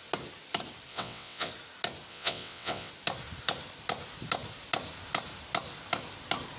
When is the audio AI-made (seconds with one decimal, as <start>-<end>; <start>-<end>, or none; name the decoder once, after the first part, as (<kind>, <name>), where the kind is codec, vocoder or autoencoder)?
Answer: 0.9-1.5 (vocoder, WaveNeXt); 2.1-2.9